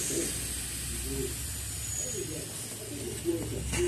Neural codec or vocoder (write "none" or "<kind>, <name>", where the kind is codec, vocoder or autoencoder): none